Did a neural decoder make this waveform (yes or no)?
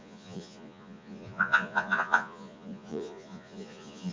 yes